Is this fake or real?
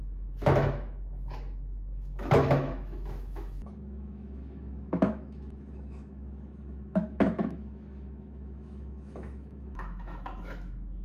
fake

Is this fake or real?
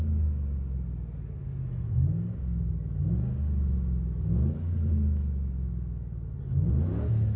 real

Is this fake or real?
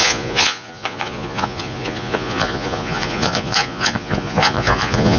fake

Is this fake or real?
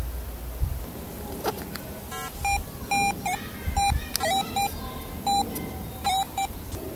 real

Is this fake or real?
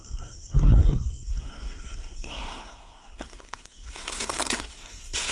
fake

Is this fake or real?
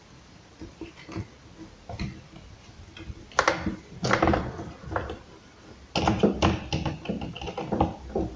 real